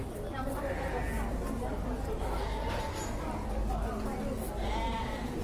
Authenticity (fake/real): real